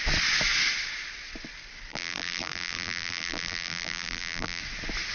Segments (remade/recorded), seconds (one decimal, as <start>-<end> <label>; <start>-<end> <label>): 0.0-1.9 recorded; 1.9-4.6 remade; 4.6-5.1 recorded